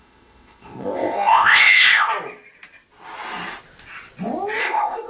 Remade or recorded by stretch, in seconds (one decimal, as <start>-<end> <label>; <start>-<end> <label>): 0.0-2.1 remade; 2.1-4.6 recorded; 4.6-5.1 remade